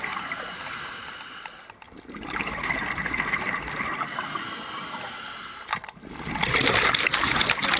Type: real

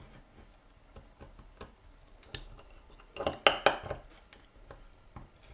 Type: real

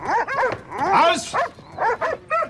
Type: real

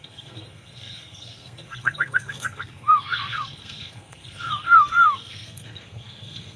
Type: fake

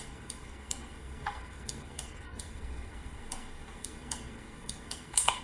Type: fake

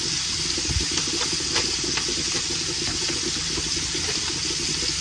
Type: real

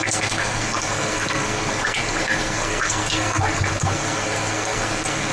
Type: fake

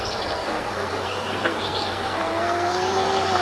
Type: fake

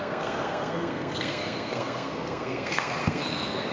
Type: fake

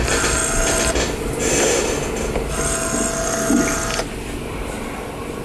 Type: real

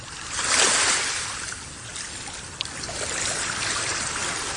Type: real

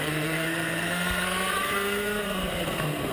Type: fake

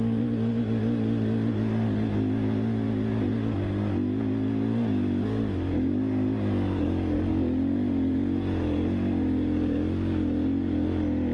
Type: real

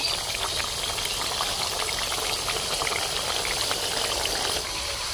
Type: real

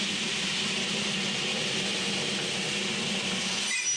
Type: real